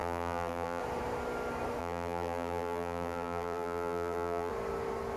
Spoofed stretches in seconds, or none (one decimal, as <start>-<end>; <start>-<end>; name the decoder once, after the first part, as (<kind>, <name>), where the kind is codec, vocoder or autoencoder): 0.0-0.8 (vocoder, BigVGAN v2); 1.8-4.5